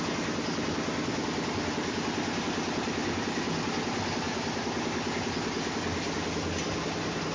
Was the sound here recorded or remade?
recorded